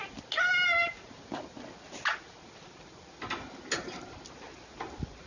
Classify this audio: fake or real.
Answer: real